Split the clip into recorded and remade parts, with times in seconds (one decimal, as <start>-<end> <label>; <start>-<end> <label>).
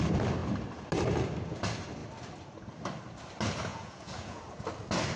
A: 0.0-3.7 recorded; 3.7-4.4 remade; 4.4-5.2 recorded